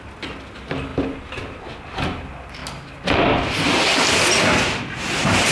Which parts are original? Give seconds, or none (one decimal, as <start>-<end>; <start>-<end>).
0.0-5.5